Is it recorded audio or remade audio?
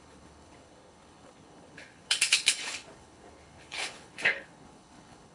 remade